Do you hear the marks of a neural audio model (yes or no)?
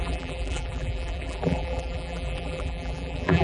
yes